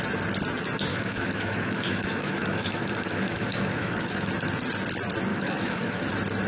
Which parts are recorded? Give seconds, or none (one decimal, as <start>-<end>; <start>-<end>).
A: 0.0-0.9; 4.3-5.3; 6.0-6.5